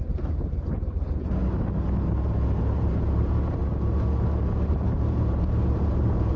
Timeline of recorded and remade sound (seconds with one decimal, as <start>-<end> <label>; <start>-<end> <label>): 0.0-1.4 remade; 1.4-2.6 recorded; 2.6-3.6 remade; 3.6-4.7 recorded; 4.7-6.4 remade